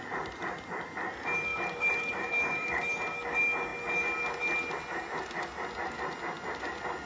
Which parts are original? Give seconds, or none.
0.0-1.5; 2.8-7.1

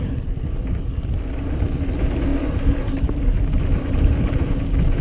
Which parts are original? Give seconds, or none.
0.0-5.0

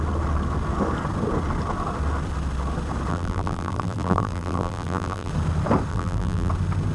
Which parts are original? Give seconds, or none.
0.0-3.1; 5.3-5.9; 6.5-6.9

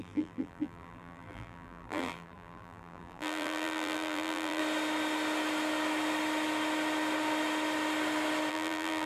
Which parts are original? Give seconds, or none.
4.6-8.5

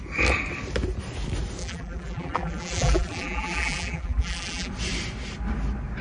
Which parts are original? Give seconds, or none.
0.0-1.6; 4.7-6.0

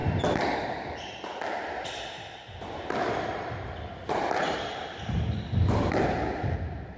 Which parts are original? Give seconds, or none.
0.0-7.0

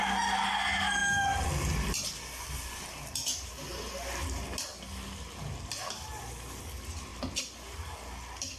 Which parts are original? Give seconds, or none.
0.0-8.6